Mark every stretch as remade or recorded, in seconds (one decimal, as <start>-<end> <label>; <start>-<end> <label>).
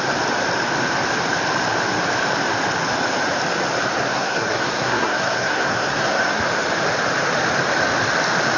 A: 0.0-4.1 recorded; 4.1-6.4 remade; 6.4-8.6 recorded